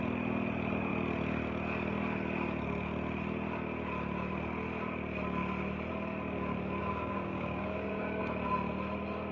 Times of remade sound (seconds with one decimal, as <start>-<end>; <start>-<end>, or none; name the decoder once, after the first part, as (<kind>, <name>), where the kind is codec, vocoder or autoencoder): 6.8-8.2 (codec, DAC)